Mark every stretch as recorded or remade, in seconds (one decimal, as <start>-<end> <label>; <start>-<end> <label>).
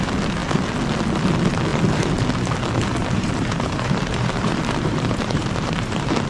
0.0-3.0 recorded; 3.0-6.3 remade